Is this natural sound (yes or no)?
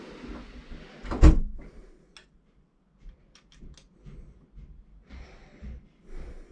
yes